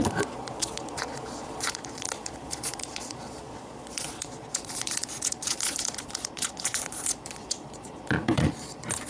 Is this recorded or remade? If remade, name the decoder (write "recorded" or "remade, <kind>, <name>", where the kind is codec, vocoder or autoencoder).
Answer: remade, vocoder, Vocos